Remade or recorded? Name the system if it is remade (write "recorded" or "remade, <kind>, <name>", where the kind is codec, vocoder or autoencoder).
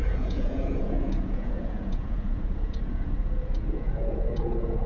remade, vocoder, Vocos